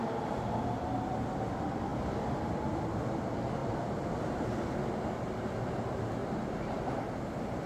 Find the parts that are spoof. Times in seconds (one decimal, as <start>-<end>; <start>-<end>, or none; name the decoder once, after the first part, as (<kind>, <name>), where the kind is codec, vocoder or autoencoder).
0.0-0.6 (vocoder, BigVGAN v2); 3.6-4.1; 6.2-6.8